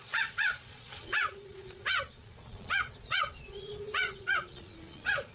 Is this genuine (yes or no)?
no